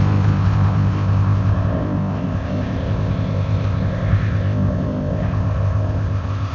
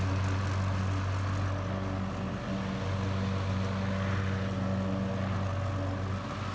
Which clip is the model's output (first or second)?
first